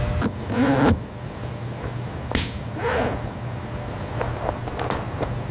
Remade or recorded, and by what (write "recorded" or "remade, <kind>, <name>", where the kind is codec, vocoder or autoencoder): recorded